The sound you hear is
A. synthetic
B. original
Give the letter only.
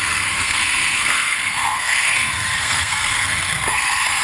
A